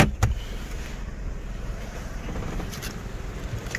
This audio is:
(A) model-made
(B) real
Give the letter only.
A